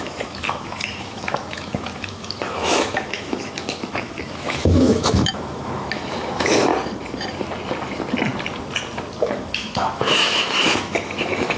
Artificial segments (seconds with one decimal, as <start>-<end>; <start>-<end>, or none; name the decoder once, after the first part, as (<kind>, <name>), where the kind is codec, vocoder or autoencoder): 0.0-6.7 (autoencoder, DAC-VAE); 9.2-11.6